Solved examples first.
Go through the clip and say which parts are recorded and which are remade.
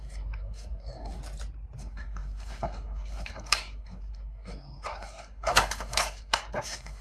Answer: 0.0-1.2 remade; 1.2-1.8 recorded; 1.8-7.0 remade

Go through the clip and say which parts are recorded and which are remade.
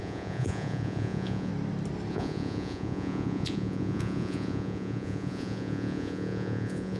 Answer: 0.0-1.5 remade; 1.5-2.1 recorded; 2.1-7.0 remade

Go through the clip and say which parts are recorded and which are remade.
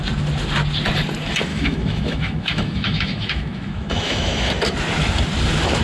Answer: 0.0-1.5 recorded; 1.5-4.5 remade; 4.5-5.8 recorded